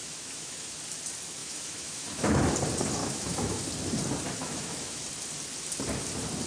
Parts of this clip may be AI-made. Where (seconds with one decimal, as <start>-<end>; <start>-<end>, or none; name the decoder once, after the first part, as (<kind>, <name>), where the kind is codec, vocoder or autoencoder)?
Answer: 0.0-0.8 (autoencoder, DAC-VAE); 1.4-2.4; 3.0-3.6; 4.4-5.0